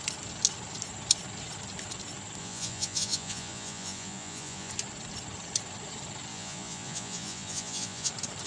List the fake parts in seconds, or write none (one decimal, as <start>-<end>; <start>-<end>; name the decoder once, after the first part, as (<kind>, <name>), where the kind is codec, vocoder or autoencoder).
2.4-4.7 (vocoder, Vocos); 6.3-8.1

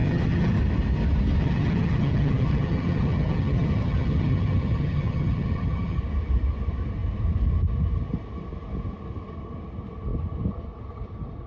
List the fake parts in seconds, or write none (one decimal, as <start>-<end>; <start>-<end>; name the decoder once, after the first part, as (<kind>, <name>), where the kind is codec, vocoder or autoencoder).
0.0-0.6 (vocoder, HiFi-GAN); 1.4-6.0

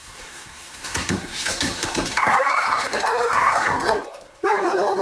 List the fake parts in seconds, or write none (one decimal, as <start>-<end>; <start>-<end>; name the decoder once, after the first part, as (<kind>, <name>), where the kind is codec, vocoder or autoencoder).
0.0-5.0 (codec, SNAC)

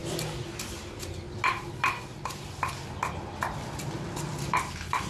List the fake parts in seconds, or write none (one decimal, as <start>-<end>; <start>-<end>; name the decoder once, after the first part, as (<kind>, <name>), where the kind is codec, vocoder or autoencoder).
none

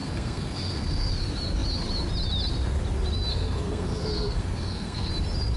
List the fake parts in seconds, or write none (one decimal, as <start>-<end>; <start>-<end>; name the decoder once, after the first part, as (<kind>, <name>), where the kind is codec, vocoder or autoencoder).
0.0-1.1 (codec, SNAC); 3.3-5.1